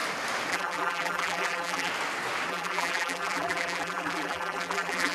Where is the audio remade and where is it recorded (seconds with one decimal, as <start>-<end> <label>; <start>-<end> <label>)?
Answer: 0.0-0.5 recorded; 0.5-1.9 remade; 1.9-2.5 recorded; 2.5-5.1 remade